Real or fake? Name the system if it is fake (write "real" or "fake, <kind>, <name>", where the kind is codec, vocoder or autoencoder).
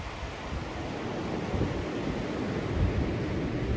real